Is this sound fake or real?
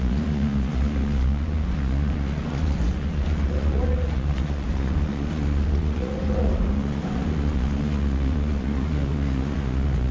fake